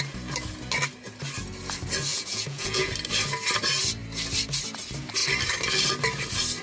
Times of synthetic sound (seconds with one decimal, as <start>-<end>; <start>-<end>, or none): 2.1-2.9